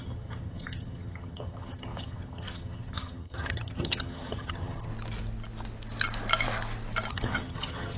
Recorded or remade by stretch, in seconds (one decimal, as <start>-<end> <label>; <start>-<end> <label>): 0.0-4.9 remade; 4.9-7.1 recorded; 7.1-8.0 remade